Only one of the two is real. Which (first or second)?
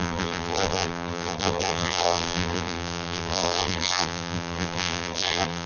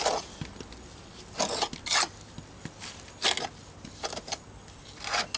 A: second